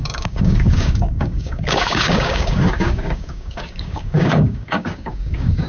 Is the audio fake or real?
fake